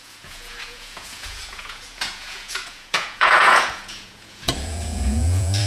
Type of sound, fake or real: fake